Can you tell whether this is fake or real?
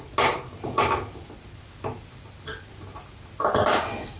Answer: real